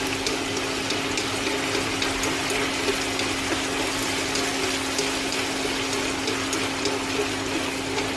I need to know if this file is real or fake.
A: real